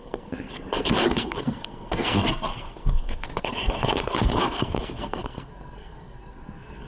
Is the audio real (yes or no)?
no